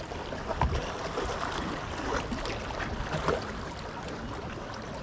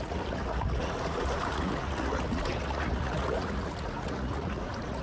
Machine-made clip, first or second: second